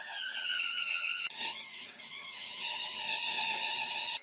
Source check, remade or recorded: remade